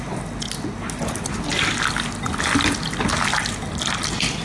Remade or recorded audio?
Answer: recorded